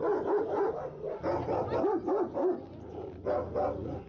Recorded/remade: recorded